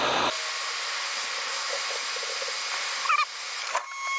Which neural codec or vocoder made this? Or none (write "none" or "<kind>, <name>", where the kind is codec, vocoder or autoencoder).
none